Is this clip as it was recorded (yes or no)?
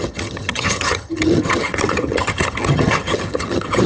no